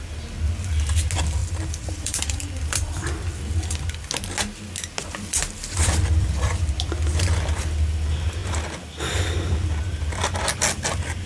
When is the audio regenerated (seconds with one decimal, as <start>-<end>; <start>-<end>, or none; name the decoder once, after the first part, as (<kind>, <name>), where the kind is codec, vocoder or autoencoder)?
1.4-4.1 (vocoder, BigVGAN v2); 5.3-7.2